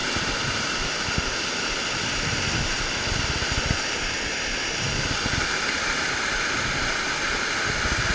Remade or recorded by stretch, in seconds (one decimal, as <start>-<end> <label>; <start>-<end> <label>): 0.0-8.1 recorded